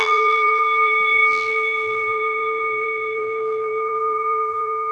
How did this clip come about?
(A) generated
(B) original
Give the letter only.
A